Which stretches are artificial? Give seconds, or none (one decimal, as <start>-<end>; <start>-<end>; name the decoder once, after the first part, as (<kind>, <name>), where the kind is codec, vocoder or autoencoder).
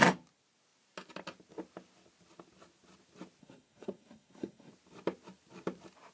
3.4-4.7 (codec, SNAC)